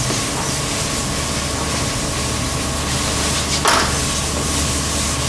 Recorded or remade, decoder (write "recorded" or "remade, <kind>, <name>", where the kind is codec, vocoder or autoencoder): recorded